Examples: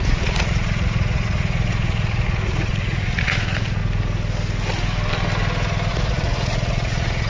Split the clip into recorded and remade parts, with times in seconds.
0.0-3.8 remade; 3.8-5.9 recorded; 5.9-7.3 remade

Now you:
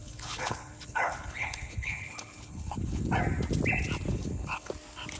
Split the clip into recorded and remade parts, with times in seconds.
0.0-3.1 remade; 3.1-4.1 recorded; 4.1-4.7 remade; 4.7-5.2 recorded

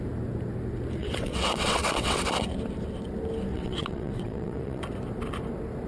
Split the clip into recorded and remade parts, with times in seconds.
0.0-1.0 recorded; 1.0-2.3 remade; 2.3-3.5 recorded; 3.5-4.8 remade; 4.8-5.9 recorded

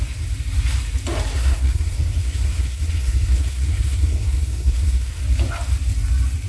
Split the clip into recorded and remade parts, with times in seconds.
0.0-1.3 recorded; 1.3-5.2 remade; 5.2-6.5 recorded

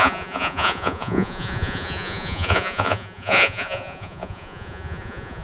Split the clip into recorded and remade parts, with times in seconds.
0.0-5.4 remade

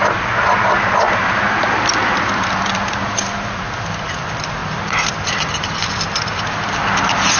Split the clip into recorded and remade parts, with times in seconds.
0.0-7.4 remade